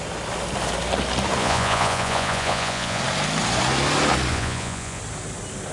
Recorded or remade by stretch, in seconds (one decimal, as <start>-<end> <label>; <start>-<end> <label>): 0.0-1.4 recorded; 1.4-3.0 remade; 3.0-4.3 recorded; 4.3-5.0 remade; 5.0-5.7 recorded

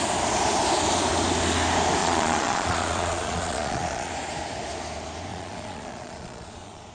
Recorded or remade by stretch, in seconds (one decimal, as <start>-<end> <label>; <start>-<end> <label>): 0.0-2.0 recorded; 2.0-4.1 remade; 4.1-5.3 recorded; 5.3-6.9 remade

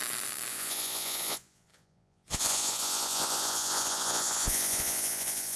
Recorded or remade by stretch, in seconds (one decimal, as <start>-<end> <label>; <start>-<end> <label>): 0.0-0.5 recorded; 0.5-5.6 remade

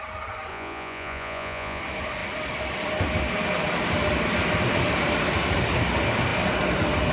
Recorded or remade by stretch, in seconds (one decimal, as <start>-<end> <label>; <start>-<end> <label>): 0.0-0.5 recorded; 0.5-1.8 remade; 1.8-7.1 recorded

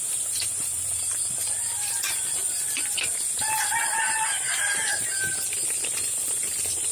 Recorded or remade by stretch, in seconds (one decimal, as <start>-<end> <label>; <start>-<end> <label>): 0.0-6.9 recorded

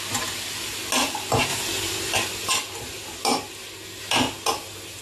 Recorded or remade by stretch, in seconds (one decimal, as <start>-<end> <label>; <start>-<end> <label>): 0.0-5.0 recorded